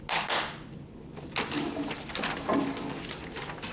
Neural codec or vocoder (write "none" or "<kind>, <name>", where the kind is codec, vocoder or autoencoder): none